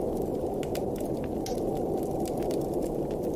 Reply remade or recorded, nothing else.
recorded